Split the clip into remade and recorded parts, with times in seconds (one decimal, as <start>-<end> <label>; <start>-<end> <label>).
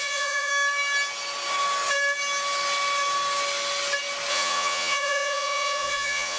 0.0-0.5 remade; 0.5-4.3 recorded; 4.3-6.4 remade